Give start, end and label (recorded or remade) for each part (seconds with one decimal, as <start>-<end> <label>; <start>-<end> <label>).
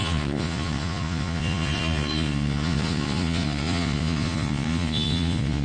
0.0-5.6 remade